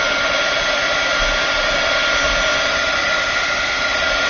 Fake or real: real